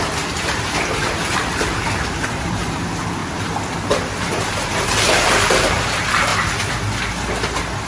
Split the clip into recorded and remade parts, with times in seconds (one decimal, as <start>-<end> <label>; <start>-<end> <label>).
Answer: 0.0-3.2 remade; 3.2-4.3 recorded; 4.3-6.3 remade; 6.3-7.9 recorded